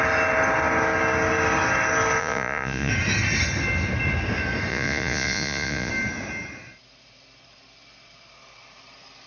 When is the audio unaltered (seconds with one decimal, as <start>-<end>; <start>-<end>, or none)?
0.0-2.2; 2.9-4.7; 5.9-9.3